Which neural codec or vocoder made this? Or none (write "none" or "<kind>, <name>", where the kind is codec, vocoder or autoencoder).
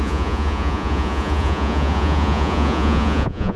vocoder, Vocos